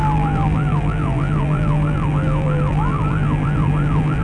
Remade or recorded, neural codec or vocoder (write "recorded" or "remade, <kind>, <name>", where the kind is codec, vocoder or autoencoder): remade, vocoder, BigVGAN v2